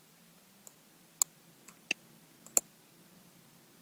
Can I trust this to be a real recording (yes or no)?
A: yes